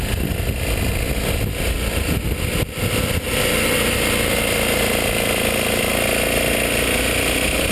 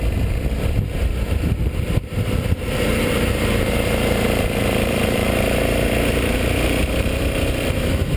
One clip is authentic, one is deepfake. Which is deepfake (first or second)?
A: second